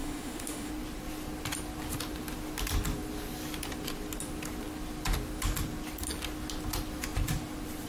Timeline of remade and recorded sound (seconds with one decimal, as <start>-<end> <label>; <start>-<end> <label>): 0.0-0.7 remade; 0.7-7.9 recorded